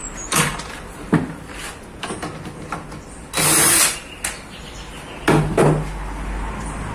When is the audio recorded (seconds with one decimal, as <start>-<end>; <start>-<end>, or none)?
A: 0.6-6.9